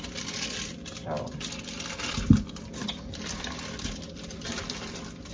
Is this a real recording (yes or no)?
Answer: yes